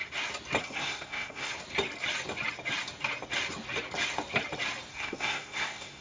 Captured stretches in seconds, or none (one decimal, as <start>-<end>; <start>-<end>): 0.0-0.6; 1.5-4.9